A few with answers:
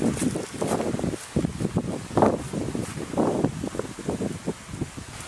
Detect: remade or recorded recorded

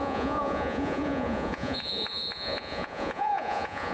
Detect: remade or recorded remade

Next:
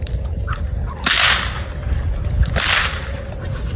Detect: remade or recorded recorded